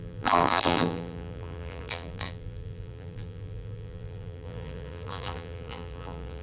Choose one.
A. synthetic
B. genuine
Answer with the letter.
A